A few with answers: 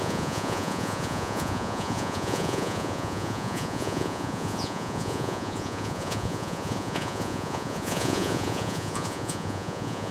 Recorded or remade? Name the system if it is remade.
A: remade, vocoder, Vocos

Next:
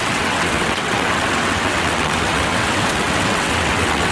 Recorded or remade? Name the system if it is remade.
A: remade, vocoder, WaveNeXt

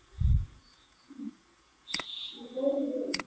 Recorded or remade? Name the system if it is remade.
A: remade, vocoder, Vocos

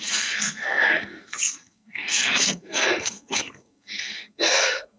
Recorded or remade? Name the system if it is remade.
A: remade, codec, SNAC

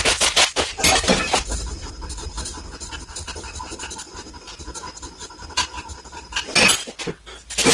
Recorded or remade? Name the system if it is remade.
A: recorded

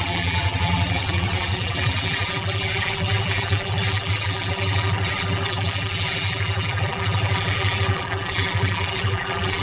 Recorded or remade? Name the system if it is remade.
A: remade, vocoder, BigVGAN v2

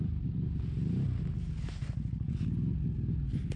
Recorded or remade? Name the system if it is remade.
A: recorded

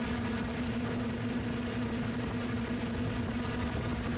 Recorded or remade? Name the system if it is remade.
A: recorded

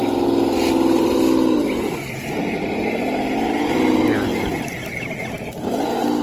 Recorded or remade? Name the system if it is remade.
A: recorded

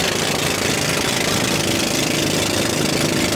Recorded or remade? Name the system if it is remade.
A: recorded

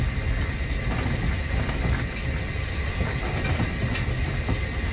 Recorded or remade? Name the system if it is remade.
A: recorded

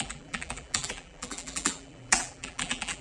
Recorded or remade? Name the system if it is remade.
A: remade, vocoder, BigVGAN v2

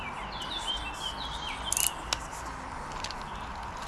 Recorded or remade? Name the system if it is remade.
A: recorded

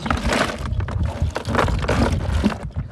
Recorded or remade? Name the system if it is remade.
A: recorded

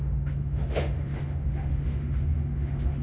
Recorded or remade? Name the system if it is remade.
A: remade, autoencoder, DAC-VAE